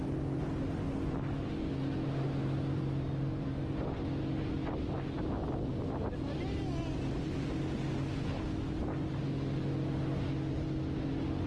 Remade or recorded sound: recorded